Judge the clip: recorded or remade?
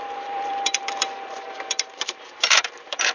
remade